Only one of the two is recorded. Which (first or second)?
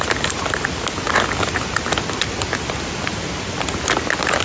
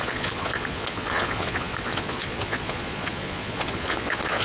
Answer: first